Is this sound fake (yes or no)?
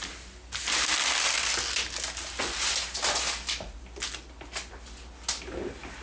no